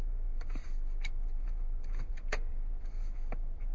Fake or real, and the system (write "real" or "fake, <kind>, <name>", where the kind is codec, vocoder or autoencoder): fake, vocoder, BigVGAN v2